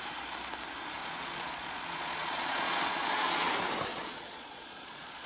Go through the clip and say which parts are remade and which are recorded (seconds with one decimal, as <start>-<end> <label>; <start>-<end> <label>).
0.0-1.0 recorded; 1.0-3.5 remade; 3.5-3.9 recorded; 3.9-5.3 remade